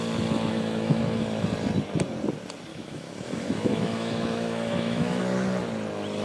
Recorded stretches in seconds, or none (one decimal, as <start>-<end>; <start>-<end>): 0.0-0.5; 1.0-2.7; 5.2-6.2